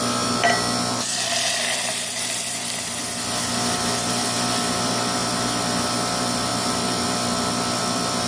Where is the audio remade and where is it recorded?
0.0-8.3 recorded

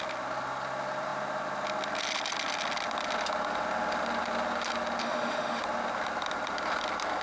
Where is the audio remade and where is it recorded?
0.0-5.0 recorded; 5.0-5.6 remade; 5.6-7.2 recorded

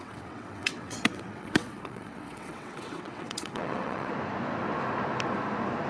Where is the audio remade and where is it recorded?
0.0-4.1 remade; 4.1-5.9 recorded

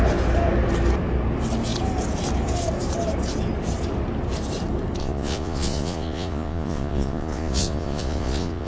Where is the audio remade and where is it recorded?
0.0-5.0 recorded; 5.0-8.7 remade

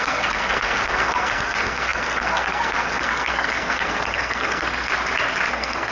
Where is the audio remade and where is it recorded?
0.0-4.9 remade; 4.9-5.5 recorded; 5.5-5.9 remade

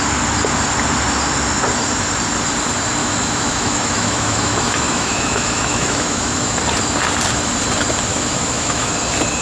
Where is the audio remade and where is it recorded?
0.0-3.0 recorded; 3.0-6.6 remade; 6.6-8.1 recorded; 8.1-8.9 remade; 8.9-9.4 recorded

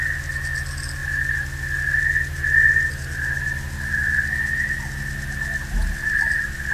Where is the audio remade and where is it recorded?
0.0-6.7 recorded